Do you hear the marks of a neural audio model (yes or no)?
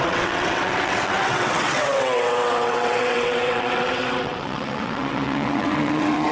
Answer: yes